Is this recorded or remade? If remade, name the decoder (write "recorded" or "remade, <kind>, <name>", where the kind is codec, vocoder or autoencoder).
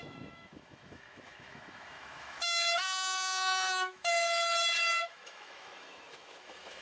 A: remade, autoencoder, DAC-VAE